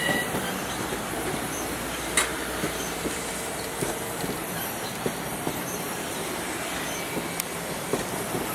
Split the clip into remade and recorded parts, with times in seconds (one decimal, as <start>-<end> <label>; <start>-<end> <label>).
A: 0.0-2.3 recorded; 2.3-6.3 remade; 6.3-8.5 recorded